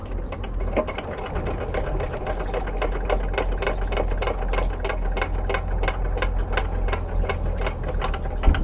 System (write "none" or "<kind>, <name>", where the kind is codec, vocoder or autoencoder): none